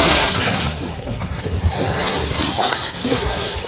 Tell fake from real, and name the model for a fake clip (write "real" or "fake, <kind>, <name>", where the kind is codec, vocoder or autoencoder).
fake, codec, SNAC